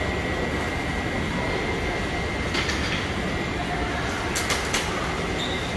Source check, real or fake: real